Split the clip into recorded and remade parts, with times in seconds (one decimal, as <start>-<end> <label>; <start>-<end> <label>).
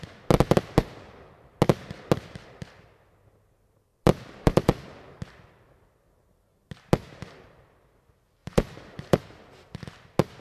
0.0-3.9 recorded; 3.9-5.0 remade; 5.0-8.4 recorded; 8.4-9.2 remade; 9.2-10.4 recorded